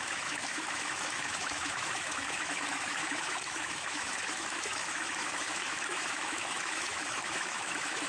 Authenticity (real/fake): fake